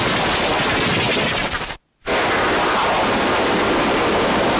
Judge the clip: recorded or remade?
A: recorded